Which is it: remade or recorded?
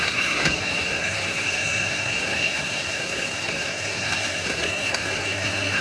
remade